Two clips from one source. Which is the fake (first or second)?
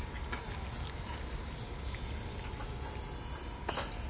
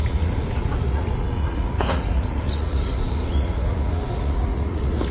second